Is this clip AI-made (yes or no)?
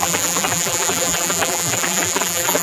yes